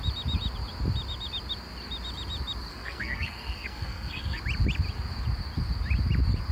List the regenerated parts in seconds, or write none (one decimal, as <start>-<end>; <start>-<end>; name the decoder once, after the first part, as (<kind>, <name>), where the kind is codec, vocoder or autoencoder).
2.7-4.4 (codec, SNAC)